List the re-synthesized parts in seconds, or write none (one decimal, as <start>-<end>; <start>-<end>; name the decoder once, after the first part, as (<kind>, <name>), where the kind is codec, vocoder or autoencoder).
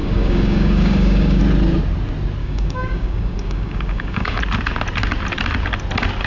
0.0-1.4 (codec, DAC); 2.4-4.4